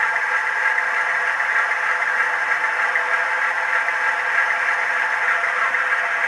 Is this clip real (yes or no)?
yes